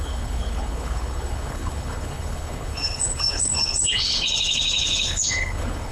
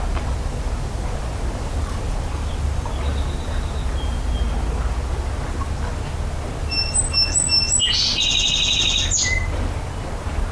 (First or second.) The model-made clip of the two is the first